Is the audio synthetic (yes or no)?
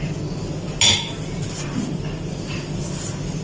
no